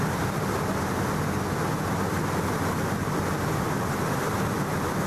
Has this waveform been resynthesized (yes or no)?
no